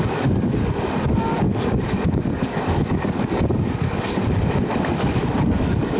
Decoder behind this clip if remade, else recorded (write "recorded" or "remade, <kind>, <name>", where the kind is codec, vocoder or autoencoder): remade, codec, DAC